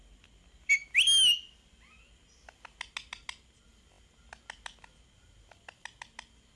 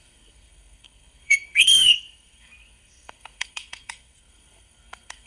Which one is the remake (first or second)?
second